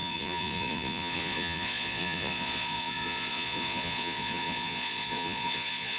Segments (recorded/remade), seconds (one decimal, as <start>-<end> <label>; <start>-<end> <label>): 0.0-6.0 remade